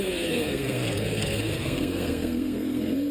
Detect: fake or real fake